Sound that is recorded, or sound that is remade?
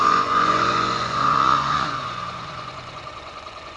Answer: remade